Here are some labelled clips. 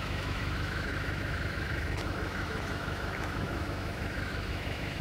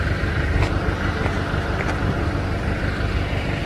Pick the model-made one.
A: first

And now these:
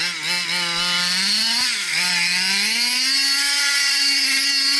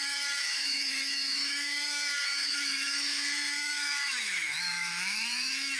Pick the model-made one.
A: second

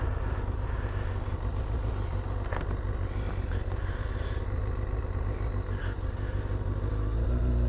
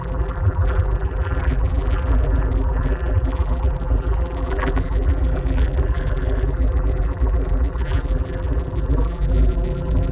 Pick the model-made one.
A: second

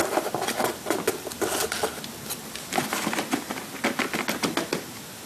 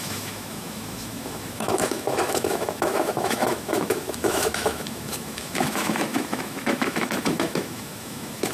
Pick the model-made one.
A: second